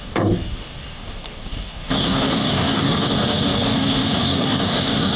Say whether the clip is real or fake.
fake